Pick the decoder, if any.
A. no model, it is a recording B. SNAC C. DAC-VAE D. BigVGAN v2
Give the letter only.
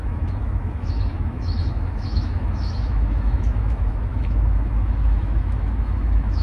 C